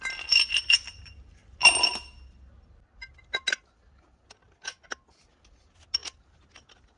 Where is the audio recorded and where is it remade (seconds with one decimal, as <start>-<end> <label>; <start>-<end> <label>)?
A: 0.0-7.0 recorded